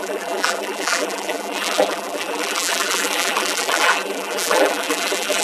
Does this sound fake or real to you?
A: fake